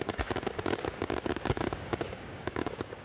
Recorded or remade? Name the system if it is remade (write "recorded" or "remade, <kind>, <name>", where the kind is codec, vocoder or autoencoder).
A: remade, codec, DAC